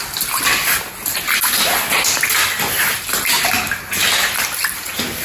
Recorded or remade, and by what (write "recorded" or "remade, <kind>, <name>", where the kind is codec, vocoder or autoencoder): recorded